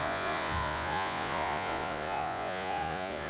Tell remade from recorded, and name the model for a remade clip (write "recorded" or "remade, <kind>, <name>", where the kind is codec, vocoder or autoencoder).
remade, vocoder, Vocos